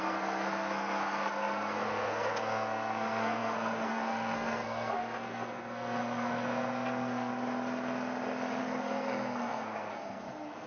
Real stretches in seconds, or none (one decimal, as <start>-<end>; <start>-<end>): 7.3-8.6